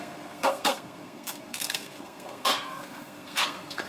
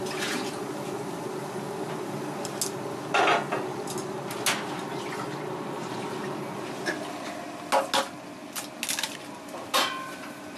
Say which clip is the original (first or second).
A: second